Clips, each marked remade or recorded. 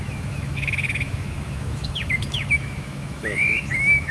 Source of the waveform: remade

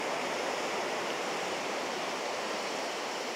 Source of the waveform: remade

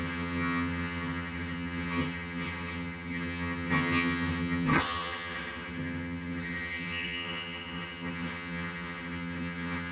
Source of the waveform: remade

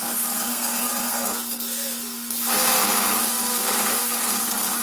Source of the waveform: remade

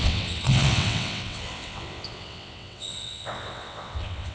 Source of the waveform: remade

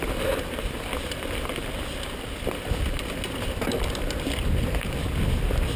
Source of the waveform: recorded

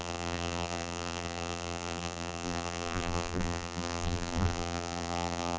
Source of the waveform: remade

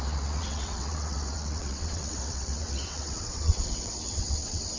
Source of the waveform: remade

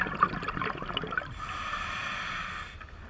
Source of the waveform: recorded